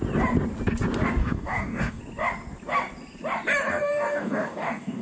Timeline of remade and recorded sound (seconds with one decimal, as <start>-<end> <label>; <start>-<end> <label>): 0.0-1.2 recorded; 1.2-2.0 remade; 2.0-3.7 recorded; 3.7-5.0 remade